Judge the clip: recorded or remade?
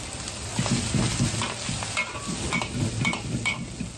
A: recorded